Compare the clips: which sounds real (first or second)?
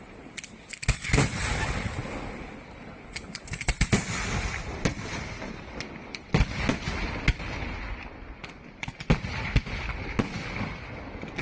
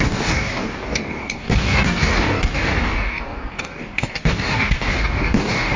first